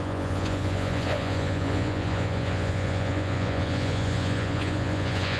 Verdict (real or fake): fake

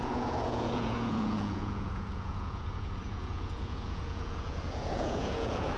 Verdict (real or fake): fake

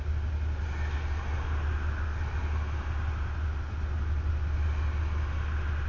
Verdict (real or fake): real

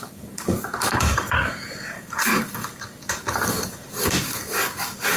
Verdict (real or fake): fake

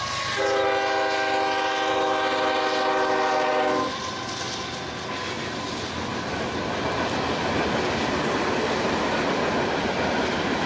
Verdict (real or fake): real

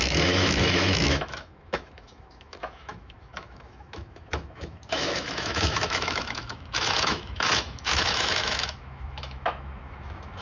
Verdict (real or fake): fake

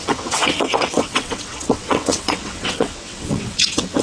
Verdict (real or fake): fake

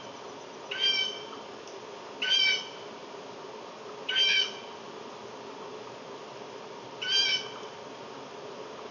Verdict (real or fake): real